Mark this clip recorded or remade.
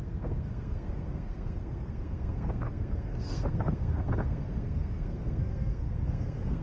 remade